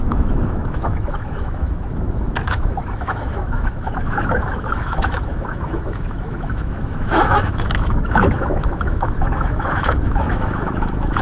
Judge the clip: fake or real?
fake